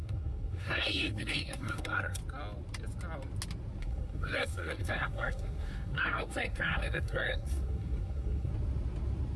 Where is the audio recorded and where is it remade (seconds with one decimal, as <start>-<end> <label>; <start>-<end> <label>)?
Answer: 0.0-2.2 remade; 2.2-3.8 recorded; 3.8-8.5 remade; 8.5-9.4 recorded